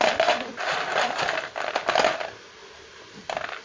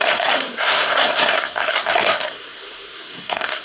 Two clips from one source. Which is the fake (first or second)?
second